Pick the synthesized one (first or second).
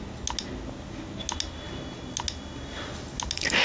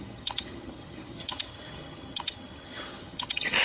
second